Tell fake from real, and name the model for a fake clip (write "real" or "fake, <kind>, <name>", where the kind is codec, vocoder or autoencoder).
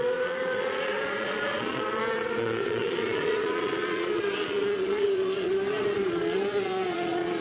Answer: fake, vocoder, Vocos